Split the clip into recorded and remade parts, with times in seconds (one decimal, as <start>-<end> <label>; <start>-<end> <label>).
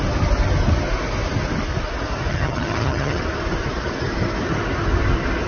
0.0-2.3 recorded; 2.3-3.2 remade; 3.2-5.5 recorded